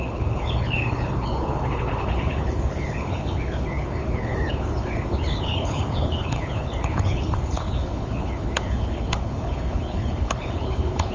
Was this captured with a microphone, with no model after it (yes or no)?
no